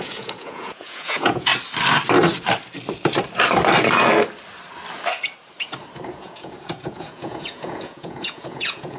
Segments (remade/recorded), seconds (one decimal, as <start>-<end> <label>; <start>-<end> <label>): 0.0-1.5 remade; 1.5-6.1 recorded; 6.1-9.0 remade